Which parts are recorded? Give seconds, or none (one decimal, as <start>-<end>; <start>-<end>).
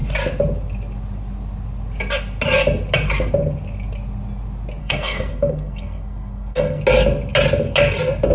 0.0-4.8; 6.8-8.3